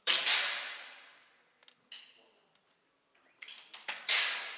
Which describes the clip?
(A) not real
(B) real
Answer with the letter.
B